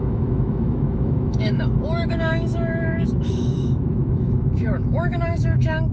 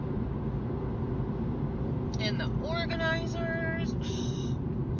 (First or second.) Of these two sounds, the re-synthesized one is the first